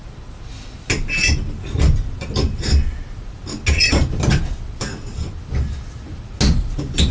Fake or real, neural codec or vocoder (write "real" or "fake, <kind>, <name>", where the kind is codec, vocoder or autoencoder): real